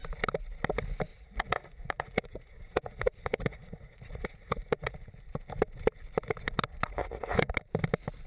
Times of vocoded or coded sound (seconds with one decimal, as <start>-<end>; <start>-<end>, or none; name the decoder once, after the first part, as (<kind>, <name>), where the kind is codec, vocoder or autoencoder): 1.1-5.1 (vocoder, Vocos); 7.0-7.5